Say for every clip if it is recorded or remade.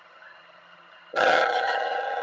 remade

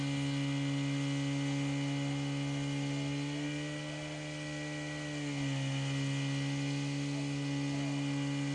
recorded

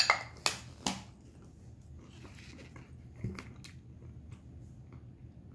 recorded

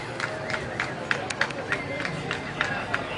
recorded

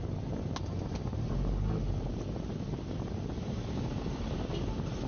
recorded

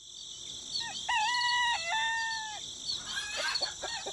recorded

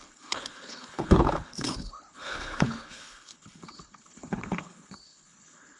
remade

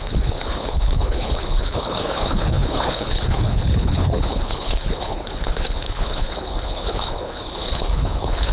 remade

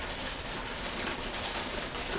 recorded